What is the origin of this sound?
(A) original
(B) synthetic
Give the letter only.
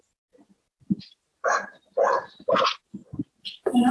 A